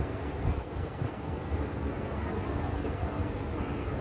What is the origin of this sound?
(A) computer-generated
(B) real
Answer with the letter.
A